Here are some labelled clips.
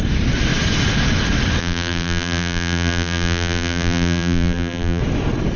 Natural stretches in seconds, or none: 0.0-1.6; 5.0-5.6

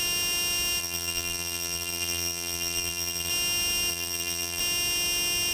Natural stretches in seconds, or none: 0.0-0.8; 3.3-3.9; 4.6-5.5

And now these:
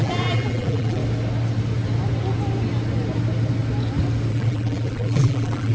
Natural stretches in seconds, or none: 1.0-4.3